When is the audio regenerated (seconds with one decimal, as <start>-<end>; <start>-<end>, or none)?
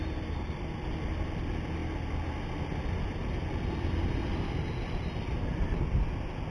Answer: none